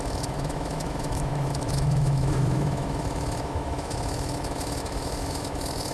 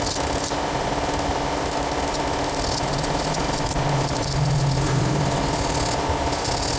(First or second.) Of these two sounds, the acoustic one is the second